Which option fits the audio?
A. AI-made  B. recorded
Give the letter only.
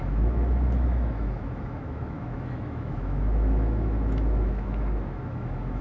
A